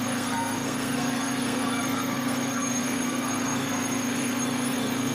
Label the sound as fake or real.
fake